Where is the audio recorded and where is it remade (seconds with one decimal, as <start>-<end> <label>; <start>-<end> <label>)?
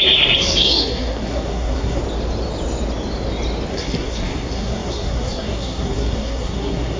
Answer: 0.0-2.0 remade; 2.0-3.7 recorded; 3.7-7.0 remade